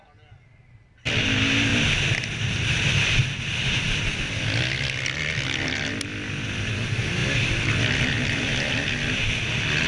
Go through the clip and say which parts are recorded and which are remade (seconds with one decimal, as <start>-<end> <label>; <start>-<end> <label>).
0.0-9.9 recorded